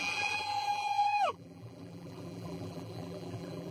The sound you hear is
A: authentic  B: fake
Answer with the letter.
B